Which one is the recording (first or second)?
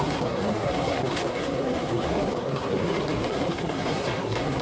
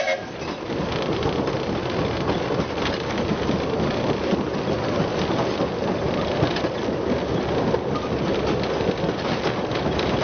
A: second